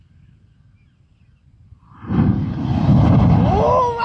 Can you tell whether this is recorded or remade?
recorded